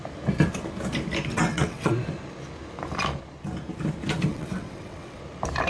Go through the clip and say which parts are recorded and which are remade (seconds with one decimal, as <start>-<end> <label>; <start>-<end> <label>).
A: 0.0-1.3 recorded; 1.3-1.9 remade; 1.9-4.3 recorded; 4.3-5.2 remade; 5.2-5.7 recorded